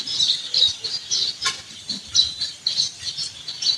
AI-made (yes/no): no